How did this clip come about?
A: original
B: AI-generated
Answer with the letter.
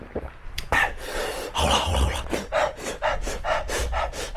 A